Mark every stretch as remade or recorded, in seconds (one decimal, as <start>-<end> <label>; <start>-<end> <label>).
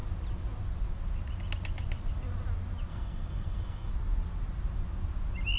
0.0-2.9 recorded; 2.9-3.9 remade; 3.9-5.6 recorded